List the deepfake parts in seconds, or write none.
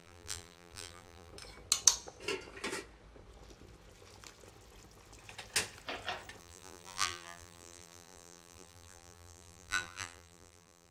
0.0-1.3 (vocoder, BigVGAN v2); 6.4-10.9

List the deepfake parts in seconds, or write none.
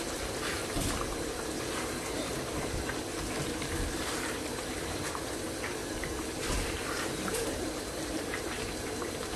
0.0-9.4 (vocoder, BigVGAN v2)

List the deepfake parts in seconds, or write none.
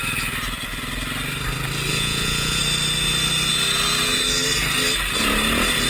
1.9-2.6 (vocoder, Vocos)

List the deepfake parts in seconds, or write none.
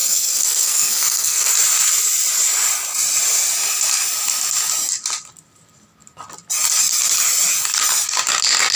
0.0-1.5 (codec, SNAC)